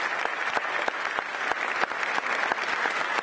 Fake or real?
real